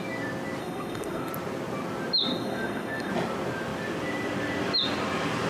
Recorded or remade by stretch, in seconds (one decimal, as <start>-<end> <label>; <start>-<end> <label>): 0.0-0.6 recorded; 0.6-1.3 remade; 1.3-2.3 recorded; 2.3-3.1 remade; 3.1-5.5 recorded